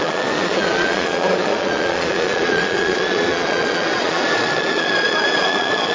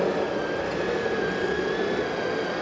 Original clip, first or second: second